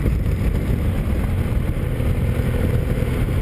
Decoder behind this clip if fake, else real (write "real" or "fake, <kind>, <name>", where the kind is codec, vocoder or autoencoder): fake, vocoder, BigVGAN v2